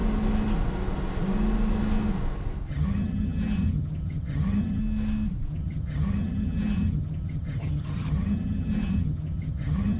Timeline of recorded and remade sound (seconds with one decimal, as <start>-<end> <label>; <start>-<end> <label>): 0.0-2.7 recorded; 2.7-4.8 remade; 4.8-5.5 recorded; 5.5-10.0 remade

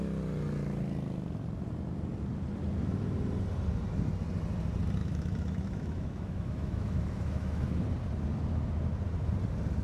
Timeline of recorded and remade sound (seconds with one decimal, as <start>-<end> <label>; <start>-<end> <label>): 0.0-5.0 recorded; 5.0-7.8 remade; 7.8-9.8 recorded